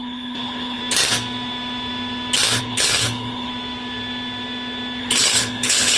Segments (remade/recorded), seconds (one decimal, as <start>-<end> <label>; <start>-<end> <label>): 0.0-0.8 remade; 0.8-2.6 recorded; 2.6-3.5 remade; 3.5-5.0 recorded; 5.0-6.0 remade